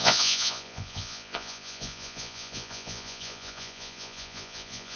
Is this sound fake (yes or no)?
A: yes